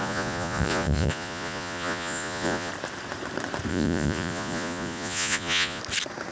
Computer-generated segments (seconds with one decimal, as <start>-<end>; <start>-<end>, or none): 0.0-2.7; 3.7-5.8